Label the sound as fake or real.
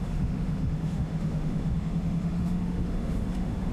fake